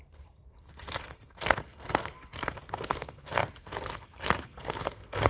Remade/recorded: remade